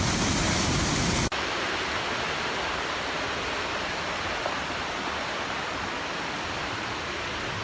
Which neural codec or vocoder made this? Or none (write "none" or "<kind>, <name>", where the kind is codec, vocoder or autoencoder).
none